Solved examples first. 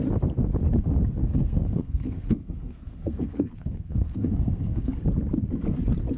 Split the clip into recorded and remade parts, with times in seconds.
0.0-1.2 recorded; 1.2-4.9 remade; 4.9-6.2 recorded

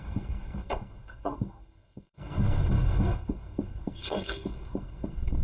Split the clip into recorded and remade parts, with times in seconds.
0.0-5.4 remade

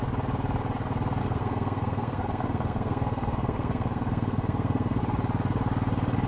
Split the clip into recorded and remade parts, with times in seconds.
0.0-1.2 recorded; 1.2-5.0 remade; 5.0-6.3 recorded

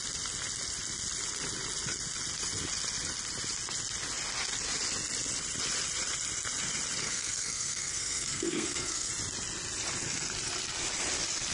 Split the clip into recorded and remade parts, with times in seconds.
0.0-7.0 recorded; 7.0-9.1 remade; 9.1-11.5 recorded

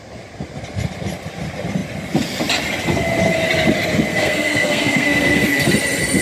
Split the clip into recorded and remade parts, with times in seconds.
0.0-4.1 recorded; 4.1-5.6 remade; 5.6-6.2 recorded

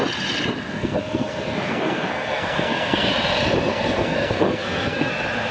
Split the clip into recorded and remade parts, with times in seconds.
0.0-0.7 recorded; 0.7-3.1 remade; 3.1-3.7 recorded; 3.7-5.1 remade; 5.1-5.5 recorded

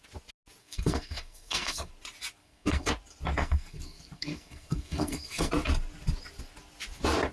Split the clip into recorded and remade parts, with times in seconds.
0.0-0.6 recorded; 0.6-1.9 remade; 1.9-2.4 recorded; 2.4-2.9 remade; 2.9-3.4 recorded; 3.4-5.5 remade; 5.5-7.3 recorded

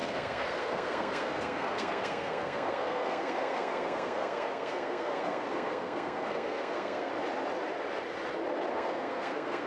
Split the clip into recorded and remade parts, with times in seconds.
0.0-7.1 remade; 7.1-8.7 recorded; 8.7-9.7 remade